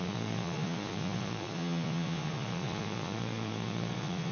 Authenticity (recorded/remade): remade